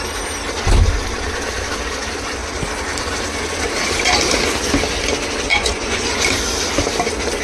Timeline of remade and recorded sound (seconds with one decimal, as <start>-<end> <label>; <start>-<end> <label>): 0.0-5.5 recorded; 5.5-6.2 remade; 6.2-7.4 recorded